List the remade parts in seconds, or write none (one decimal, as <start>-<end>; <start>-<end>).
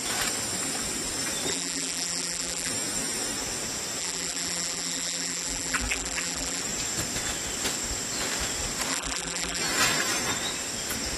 1.5-2.7; 4.0-6.6; 8.9-9.6